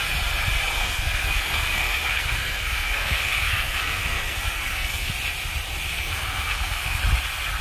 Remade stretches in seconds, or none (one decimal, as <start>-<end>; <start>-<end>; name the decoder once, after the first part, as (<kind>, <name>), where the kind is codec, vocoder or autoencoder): 0.8-5.1 (codec, SNAC); 5.9-7.0